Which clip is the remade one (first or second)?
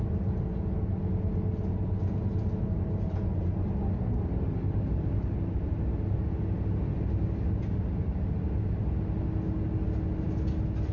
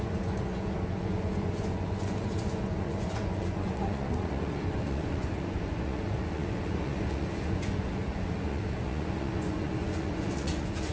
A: second